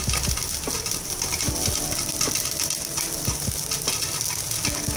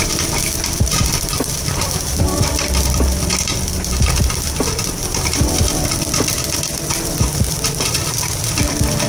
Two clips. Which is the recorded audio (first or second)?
first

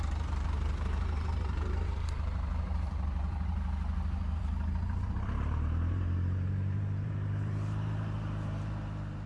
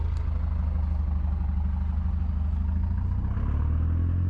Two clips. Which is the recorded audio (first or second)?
second